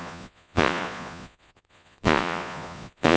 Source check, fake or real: fake